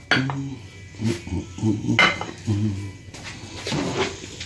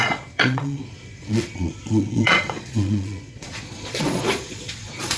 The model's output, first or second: second